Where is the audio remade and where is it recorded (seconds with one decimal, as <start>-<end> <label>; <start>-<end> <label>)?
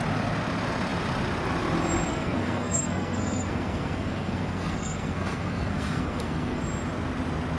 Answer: 0.0-2.1 recorded; 2.1-6.6 remade; 6.6-7.6 recorded